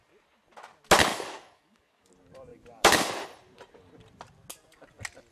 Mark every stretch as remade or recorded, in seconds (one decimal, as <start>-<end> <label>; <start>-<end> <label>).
0.0-1.1 recorded; 1.1-2.1 remade; 2.1-2.5 recorded; 2.5-3.1 remade; 3.1-5.3 recorded

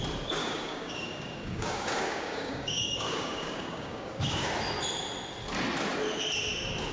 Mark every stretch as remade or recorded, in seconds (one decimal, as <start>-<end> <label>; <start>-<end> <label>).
0.0-0.4 recorded; 0.4-4.5 remade; 4.5-6.9 recorded